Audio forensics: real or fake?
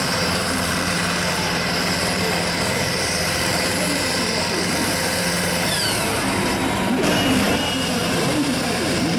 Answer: fake